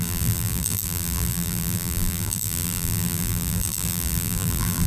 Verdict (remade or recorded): remade